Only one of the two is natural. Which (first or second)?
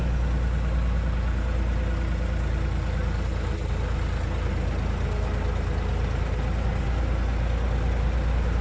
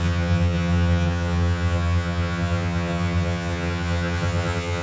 first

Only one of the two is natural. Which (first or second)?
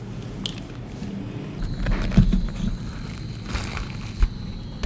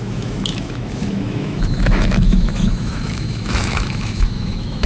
first